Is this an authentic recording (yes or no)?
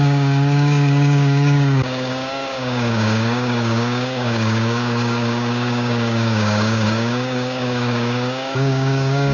no